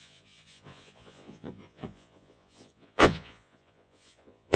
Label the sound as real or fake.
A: fake